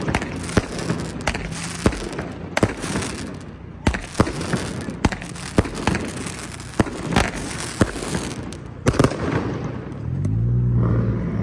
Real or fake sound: real